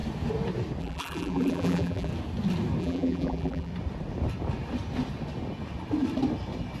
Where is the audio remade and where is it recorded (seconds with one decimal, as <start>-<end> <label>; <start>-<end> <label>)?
0.0-0.8 recorded; 0.8-2.1 remade; 2.1-2.8 recorded; 2.8-3.7 remade; 3.7-6.8 recorded

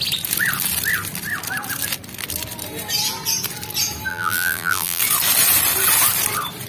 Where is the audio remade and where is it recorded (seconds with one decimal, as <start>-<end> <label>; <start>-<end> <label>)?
0.0-4.1 recorded; 4.1-5.0 remade; 5.0-6.7 recorded